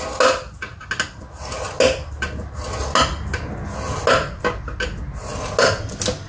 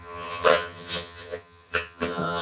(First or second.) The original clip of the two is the first